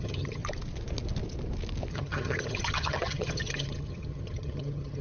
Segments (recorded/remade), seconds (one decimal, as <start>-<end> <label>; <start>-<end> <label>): 0.0-0.4 remade; 0.4-1.9 recorded; 1.9-5.0 remade

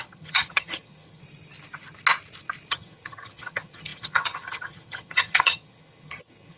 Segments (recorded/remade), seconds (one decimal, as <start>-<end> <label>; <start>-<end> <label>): 0.0-1.2 remade; 1.2-2.7 recorded; 2.7-6.6 remade

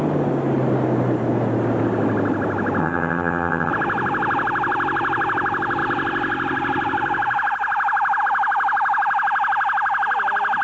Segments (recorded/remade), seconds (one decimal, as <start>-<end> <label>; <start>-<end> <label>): 0.0-2.8 recorded; 2.8-3.7 remade; 3.7-10.6 recorded

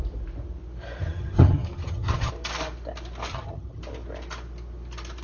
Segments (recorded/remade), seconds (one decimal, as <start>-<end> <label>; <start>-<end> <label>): 0.0-1.0 recorded; 1.0-2.3 remade; 2.3-3.3 recorded; 3.3-3.8 remade; 3.8-5.2 recorded

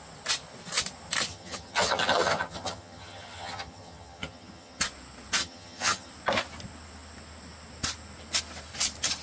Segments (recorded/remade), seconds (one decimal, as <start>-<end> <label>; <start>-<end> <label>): 0.0-1.3 recorded; 1.3-4.8 remade; 4.8-5.4 recorded; 5.4-6.1 remade; 6.1-9.2 recorded

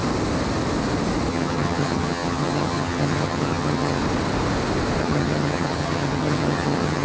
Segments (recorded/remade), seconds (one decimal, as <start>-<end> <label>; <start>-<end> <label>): 0.0-1.3 recorded; 1.3-4.0 remade; 4.0-5.0 recorded; 5.0-7.0 remade